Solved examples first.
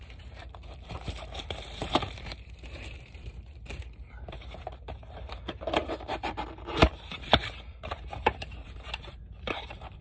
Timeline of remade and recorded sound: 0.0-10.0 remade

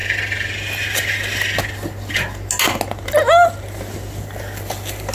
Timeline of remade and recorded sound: 0.0-5.1 recorded